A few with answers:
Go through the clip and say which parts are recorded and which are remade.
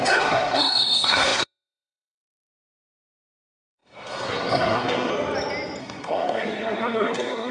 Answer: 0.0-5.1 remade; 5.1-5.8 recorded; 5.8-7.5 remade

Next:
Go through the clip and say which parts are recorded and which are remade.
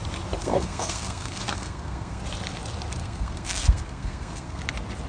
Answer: 0.0-0.4 recorded; 0.4-2.2 remade; 2.2-3.0 recorded; 3.0-4.6 remade; 4.6-5.1 recorded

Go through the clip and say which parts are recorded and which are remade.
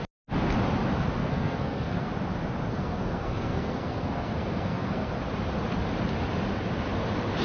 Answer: 0.0-1.2 recorded; 1.2-2.1 remade; 2.1-2.7 recorded; 2.7-5.1 remade; 5.1-7.4 recorded